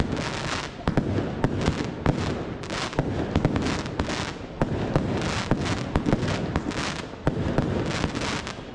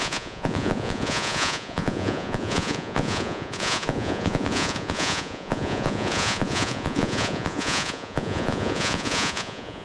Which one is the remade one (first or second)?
second